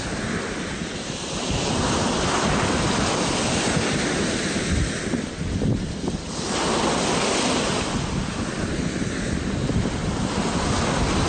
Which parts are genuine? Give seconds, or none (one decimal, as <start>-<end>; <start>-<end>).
0.0-11.3